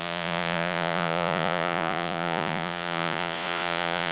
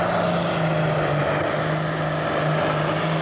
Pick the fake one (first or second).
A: first